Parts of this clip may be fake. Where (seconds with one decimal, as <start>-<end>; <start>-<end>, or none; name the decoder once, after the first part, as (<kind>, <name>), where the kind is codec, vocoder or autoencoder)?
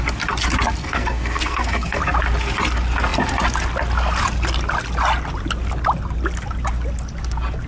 0.8-2.0 (codec, SNAC)